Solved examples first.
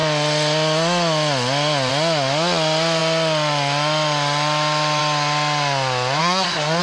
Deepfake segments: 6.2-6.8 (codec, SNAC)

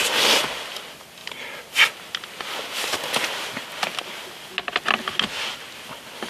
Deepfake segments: none

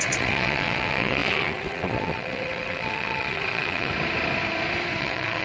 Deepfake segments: 0.0-3.9 (vocoder, WaveNeXt); 5.0-5.4

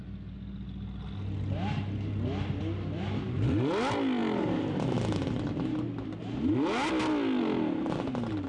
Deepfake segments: none